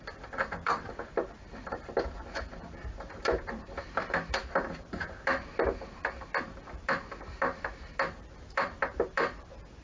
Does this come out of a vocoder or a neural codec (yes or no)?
yes